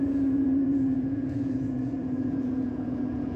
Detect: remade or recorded remade